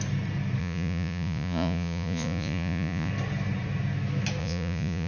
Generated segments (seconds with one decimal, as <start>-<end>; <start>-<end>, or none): 0.6-3.1; 4.4-5.1